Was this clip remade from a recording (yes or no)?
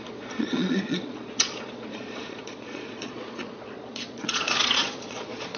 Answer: yes